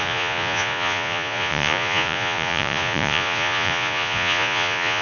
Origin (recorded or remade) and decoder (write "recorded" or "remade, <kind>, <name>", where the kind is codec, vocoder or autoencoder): remade, vocoder, Vocos